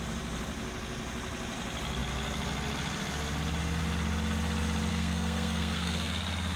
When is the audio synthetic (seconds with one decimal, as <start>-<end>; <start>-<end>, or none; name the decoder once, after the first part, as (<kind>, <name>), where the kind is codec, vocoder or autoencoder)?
4.9-6.1 (codec, SNAC)